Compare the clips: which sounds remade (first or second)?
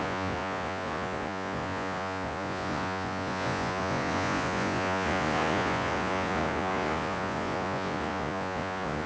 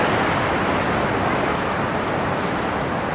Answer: first